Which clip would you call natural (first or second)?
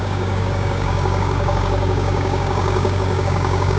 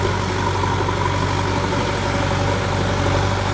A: second